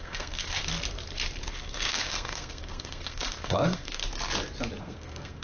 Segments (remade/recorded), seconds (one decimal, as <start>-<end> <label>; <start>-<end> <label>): 0.0-0.6 remade; 0.6-1.5 recorded; 1.5-4.0 remade; 4.0-4.8 recorded; 4.8-5.4 remade